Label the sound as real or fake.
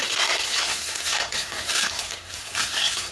fake